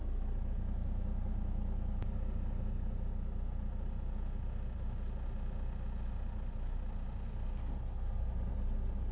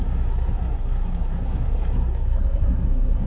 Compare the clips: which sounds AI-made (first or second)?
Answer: second